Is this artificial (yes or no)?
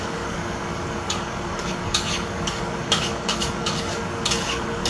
yes